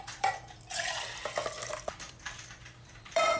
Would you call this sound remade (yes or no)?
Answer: yes